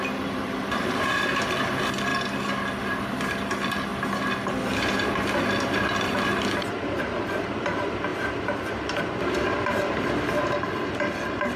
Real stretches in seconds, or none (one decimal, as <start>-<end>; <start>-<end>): 0.0-0.4; 1.4-11.6